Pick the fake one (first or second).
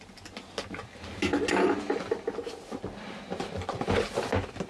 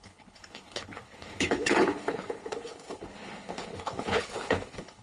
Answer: second